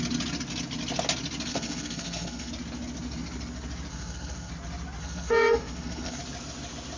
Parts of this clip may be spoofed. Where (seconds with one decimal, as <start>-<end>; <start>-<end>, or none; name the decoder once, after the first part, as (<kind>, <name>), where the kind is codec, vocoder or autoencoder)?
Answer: 1.5-2.5 (codec, SNAC); 3.9-4.5; 5.0-6.2